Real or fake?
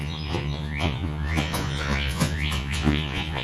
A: fake